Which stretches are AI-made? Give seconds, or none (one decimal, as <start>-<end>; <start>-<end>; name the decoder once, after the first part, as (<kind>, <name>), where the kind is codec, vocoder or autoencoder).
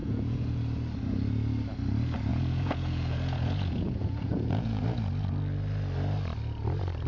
0.0-0.6 (vocoder, Vocos); 2.3-4.8